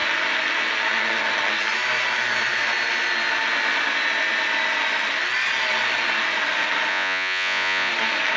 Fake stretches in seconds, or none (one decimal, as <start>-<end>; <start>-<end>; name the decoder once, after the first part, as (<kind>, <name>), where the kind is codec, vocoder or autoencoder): 6.9-7.9 (vocoder, Vocos)